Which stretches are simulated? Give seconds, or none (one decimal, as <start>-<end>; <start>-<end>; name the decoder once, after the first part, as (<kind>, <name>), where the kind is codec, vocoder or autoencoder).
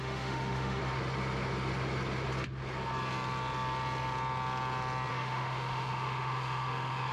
0.0-0.8 (autoencoder, DAC-VAE); 5.1-7.1